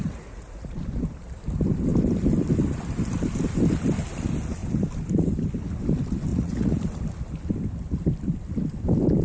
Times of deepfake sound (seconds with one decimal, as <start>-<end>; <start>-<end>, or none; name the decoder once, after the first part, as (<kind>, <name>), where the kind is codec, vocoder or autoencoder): 0.0-0.8 (vocoder, Vocos); 6.3-6.8